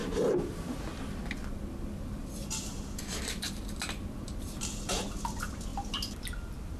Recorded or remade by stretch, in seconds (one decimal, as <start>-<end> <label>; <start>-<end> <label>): 0.0-0.9 remade; 0.9-2.2 recorded; 2.2-3.5 remade; 3.5-5.7 recorded; 5.7-6.8 remade